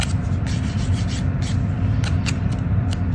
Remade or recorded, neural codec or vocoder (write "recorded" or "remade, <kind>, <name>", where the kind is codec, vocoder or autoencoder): recorded